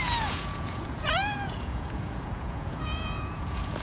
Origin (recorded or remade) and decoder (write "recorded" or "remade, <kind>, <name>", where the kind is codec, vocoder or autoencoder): remade, vocoder, Vocos